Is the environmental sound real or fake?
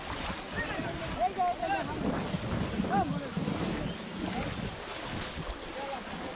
real